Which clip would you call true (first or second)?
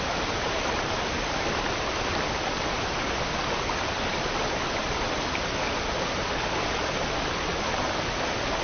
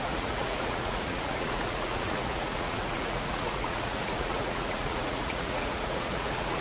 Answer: first